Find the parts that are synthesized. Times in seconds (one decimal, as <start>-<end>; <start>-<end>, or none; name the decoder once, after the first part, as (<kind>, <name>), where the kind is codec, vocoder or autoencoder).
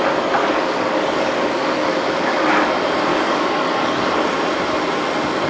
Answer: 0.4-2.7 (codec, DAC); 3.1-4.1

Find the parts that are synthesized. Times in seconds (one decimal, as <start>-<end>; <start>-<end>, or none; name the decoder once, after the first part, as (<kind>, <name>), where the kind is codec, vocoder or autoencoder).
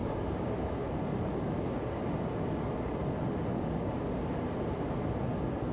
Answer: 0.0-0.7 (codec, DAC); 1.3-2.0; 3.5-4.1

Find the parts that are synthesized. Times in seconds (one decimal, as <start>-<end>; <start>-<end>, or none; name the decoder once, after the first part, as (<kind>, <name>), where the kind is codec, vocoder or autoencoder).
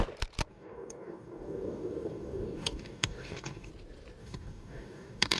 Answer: 0.5-3.7 (codec, DAC); 4.2-5.4